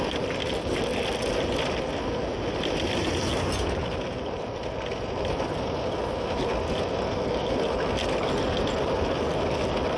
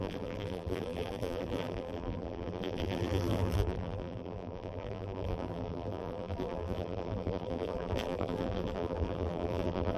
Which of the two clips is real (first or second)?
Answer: first